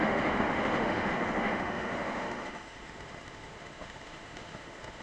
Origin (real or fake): fake